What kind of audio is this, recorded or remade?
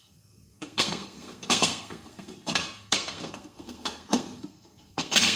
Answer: remade